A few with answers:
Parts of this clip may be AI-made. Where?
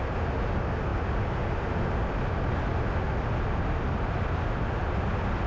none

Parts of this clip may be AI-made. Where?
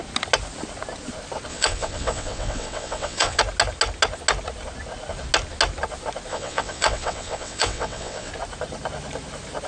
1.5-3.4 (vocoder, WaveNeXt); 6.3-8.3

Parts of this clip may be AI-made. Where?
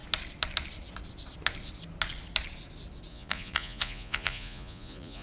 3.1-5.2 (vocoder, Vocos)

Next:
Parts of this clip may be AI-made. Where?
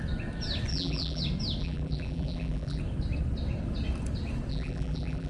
0.7-1.2 (vocoder, BigVGAN v2); 1.6-2.8; 4.5-5.3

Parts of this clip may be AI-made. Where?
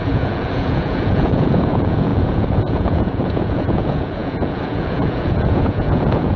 0.0-6.4 (vocoder, Vocos)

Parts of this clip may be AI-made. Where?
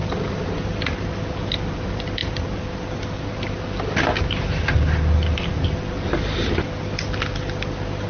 none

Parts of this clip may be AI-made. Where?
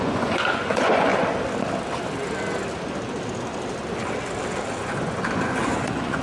0.0-1.1 (vocoder, Vocos); 4.8-6.2